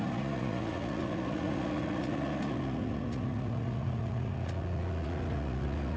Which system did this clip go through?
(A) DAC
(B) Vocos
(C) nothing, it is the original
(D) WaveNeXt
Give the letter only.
B